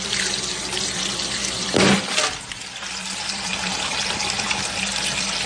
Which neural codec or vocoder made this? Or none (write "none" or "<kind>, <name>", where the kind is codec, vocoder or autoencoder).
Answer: vocoder, BigVGAN v2